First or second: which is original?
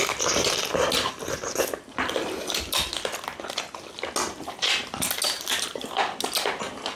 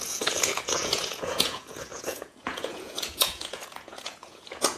first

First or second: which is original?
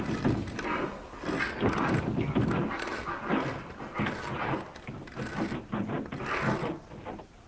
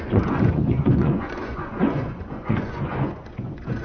first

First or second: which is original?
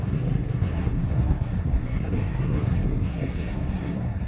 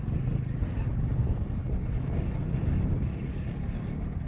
second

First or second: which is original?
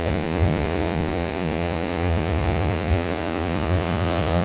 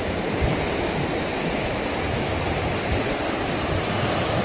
second